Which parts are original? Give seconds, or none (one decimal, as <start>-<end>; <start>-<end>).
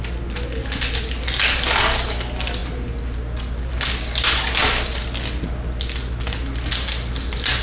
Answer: 0.0-7.6